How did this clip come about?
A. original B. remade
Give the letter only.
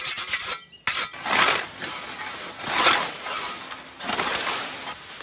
A